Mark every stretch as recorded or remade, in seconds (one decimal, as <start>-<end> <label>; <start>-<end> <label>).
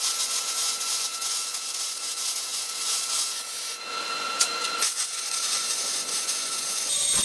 0.0-7.2 remade